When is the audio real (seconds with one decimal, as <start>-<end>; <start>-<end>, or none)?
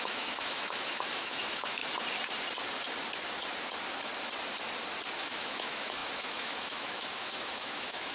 1.8-5.2